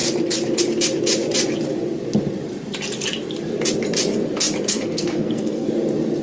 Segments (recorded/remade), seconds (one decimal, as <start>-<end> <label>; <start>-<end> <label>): 0.0-4.7 recorded; 4.7-5.7 remade; 5.7-6.2 recorded